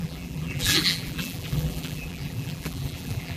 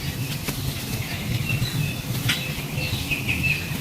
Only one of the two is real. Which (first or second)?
second